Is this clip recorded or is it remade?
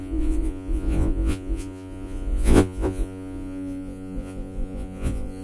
remade